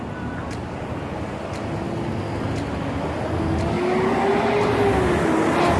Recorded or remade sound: recorded